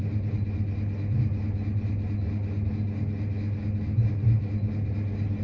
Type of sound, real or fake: real